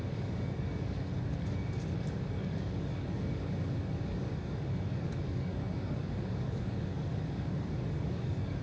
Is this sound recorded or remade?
remade